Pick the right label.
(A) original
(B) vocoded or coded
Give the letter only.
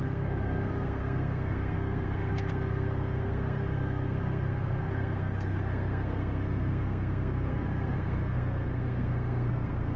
B